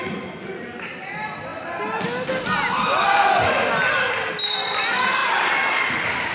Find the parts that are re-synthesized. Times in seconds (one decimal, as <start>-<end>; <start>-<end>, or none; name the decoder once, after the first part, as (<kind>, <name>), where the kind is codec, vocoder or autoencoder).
none